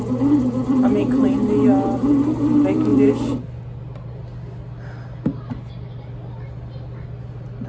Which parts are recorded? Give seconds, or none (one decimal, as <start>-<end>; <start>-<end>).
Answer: 0.0-7.7